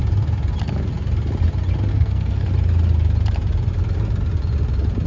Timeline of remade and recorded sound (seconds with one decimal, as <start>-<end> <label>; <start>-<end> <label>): 0.0-1.9 recorded; 1.9-2.5 remade; 2.5-5.1 recorded